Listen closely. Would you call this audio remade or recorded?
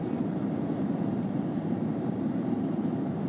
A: remade